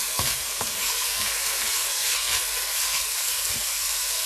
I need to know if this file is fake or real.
fake